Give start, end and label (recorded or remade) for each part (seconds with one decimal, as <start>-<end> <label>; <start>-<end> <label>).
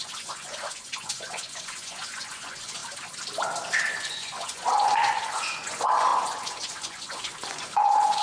0.0-2.8 remade; 2.8-3.9 recorded; 3.9-8.2 remade